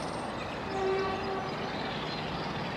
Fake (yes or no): no